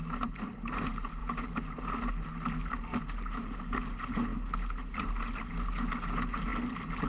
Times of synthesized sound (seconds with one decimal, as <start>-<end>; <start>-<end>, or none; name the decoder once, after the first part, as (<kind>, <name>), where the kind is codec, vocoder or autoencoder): none